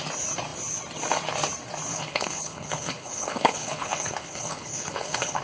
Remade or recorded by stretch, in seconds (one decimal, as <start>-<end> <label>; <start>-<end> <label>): 0.0-1.9 recorded; 1.9-5.4 remade